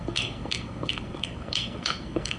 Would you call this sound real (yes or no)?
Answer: no